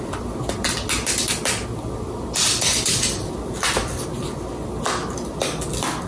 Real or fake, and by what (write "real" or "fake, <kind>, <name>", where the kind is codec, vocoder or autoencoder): real